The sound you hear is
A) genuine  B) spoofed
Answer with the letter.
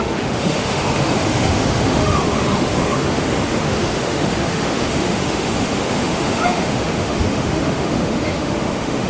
B